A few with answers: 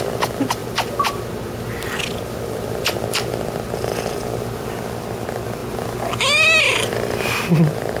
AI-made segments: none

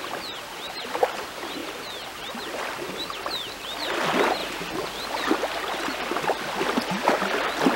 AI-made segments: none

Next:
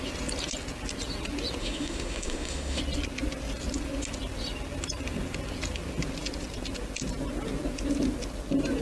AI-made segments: 1.6-2.8 (autoencoder, DAC-VAE)

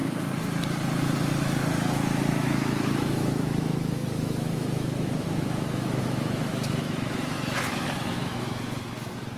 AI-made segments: 2.3-9.4 (autoencoder, DAC-VAE)